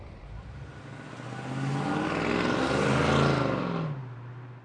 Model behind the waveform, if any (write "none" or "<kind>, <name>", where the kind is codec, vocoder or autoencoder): none